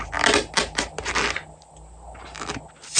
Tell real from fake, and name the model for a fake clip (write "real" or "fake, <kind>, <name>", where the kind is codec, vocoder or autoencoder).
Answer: real